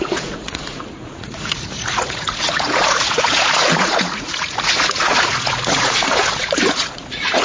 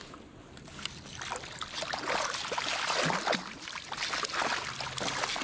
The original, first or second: second